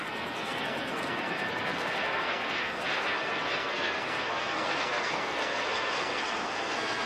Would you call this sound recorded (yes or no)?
no